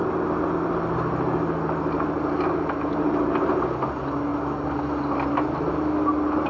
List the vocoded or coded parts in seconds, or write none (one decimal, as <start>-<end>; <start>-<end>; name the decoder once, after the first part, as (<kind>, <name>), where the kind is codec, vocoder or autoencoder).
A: none